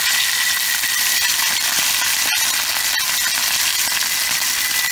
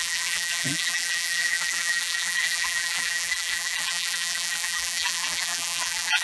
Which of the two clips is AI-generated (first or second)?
second